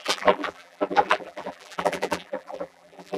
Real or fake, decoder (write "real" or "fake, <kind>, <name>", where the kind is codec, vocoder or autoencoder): fake, vocoder, BigVGAN v2